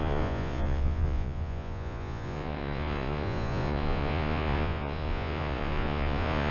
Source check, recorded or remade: remade